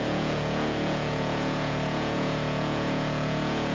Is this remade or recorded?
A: remade